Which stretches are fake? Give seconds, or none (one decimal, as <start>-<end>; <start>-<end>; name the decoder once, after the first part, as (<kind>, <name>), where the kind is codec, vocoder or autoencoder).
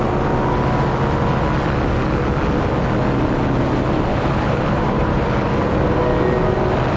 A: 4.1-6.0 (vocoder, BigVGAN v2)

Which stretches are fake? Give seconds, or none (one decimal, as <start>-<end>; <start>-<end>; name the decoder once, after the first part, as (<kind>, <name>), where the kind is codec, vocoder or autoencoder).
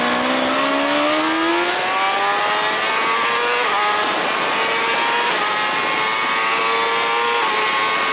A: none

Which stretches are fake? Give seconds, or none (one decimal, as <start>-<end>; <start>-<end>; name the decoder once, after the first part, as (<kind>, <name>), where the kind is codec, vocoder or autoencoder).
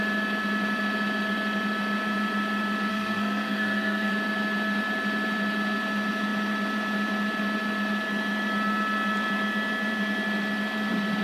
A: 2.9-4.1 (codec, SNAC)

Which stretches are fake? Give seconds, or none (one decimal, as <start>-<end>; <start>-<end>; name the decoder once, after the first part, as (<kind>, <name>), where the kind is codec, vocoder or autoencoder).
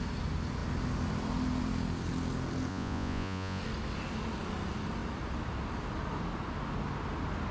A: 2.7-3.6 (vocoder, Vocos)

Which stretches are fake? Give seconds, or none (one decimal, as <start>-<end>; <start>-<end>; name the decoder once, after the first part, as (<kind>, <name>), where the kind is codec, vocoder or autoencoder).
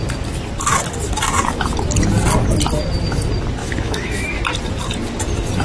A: 3.6-4.4 (autoencoder, DAC-VAE)